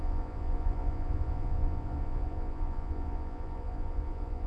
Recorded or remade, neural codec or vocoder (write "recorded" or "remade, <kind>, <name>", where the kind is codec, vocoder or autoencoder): remade, vocoder, Vocos